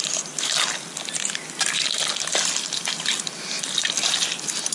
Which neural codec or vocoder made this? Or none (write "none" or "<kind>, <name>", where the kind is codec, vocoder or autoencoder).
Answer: none